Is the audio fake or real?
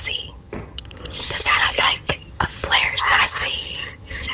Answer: fake